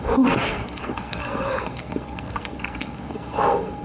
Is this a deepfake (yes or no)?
yes